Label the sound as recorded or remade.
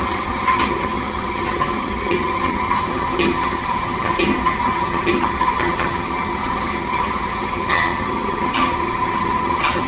remade